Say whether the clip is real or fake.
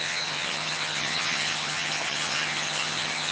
fake